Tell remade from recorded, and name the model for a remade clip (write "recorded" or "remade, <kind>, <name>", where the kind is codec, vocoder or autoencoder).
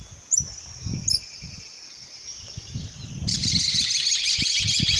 recorded